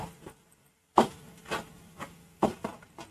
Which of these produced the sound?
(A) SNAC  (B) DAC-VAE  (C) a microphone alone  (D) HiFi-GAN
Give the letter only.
C